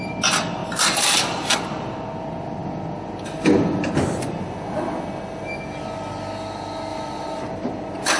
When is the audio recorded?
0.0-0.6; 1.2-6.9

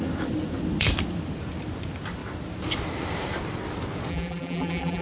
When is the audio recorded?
0.0-4.1

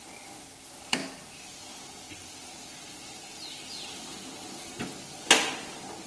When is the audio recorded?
0.0-6.1

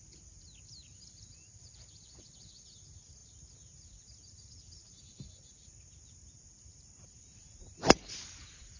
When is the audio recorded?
0.0-6.7; 7.3-8.8

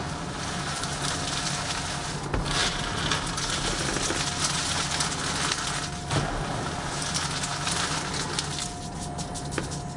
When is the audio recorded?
0.0-10.0

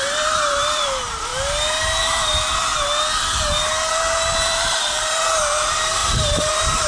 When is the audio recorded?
1.3-2.0; 2.7-3.9